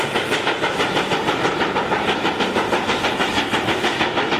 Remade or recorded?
recorded